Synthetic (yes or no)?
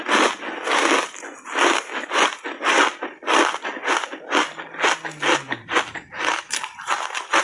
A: no